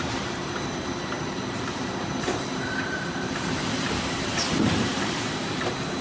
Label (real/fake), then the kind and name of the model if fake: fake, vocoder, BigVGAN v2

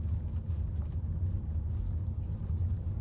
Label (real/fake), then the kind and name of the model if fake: real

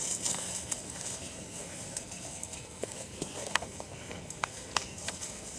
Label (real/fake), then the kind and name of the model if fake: fake, codec, SNAC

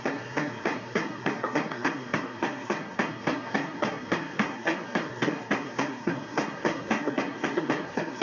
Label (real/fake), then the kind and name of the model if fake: fake, codec, SNAC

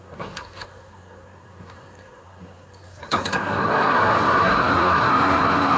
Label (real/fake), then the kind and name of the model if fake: fake, codec, SNAC